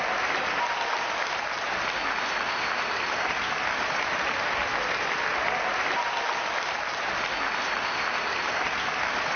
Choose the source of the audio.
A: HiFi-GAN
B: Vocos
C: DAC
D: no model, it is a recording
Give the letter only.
D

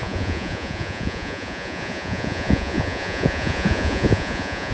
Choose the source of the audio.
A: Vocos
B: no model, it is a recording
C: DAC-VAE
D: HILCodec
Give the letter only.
A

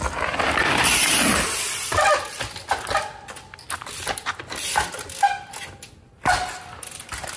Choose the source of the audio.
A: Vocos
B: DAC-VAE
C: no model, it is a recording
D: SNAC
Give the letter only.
C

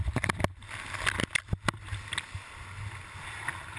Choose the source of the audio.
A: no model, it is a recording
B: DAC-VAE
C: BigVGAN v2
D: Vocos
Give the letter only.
A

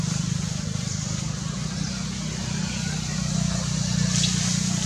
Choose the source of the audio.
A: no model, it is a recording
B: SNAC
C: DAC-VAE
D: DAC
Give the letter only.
A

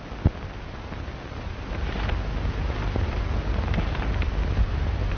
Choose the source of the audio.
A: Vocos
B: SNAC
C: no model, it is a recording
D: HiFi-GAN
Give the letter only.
C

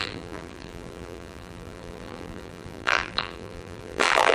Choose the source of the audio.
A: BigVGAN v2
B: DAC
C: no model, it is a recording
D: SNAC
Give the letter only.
A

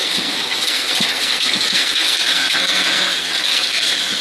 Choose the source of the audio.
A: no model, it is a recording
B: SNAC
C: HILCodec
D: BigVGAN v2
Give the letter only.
B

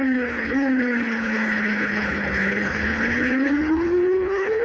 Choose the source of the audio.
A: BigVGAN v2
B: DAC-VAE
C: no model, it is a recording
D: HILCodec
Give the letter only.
D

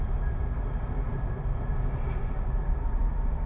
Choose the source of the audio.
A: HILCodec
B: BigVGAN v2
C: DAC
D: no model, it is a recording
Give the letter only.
D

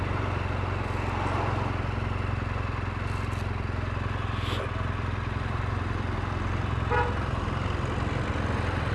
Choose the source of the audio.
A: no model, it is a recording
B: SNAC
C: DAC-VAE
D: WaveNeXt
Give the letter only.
A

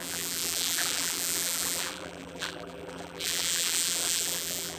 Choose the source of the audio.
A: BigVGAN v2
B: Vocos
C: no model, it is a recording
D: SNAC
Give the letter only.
A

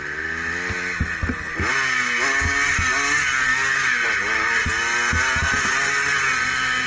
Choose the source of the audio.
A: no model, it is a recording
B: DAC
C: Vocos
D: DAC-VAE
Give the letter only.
A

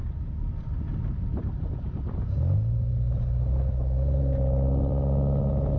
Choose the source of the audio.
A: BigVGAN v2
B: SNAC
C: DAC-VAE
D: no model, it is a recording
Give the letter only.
D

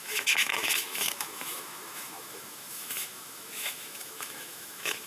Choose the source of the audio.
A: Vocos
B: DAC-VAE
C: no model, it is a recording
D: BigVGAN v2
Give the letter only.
B